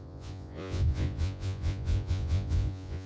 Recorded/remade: remade